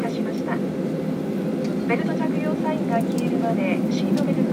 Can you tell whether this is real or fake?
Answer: real